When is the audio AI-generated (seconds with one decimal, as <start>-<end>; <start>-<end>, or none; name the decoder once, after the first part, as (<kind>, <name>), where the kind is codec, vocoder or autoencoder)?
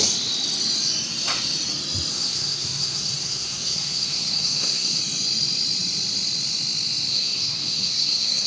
2.1-5.0 (codec, SNAC); 7.1-8.5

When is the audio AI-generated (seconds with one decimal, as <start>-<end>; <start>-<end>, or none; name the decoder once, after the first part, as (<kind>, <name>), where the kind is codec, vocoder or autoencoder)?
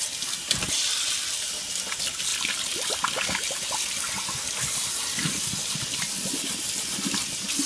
none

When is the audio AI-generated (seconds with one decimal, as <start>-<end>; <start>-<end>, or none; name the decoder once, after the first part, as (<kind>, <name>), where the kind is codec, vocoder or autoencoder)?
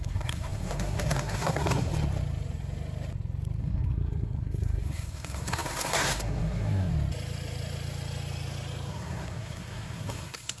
0.0-1.9 (codec, SNAC); 3.6-6.9; 8.9-10.6